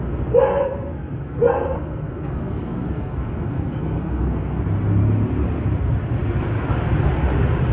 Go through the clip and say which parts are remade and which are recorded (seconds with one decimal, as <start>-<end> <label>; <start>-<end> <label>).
0.0-0.5 recorded; 0.5-4.6 remade; 4.6-7.7 recorded